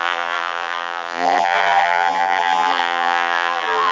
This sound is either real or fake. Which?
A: fake